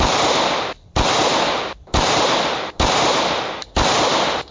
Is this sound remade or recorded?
recorded